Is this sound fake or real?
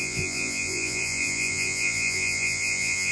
fake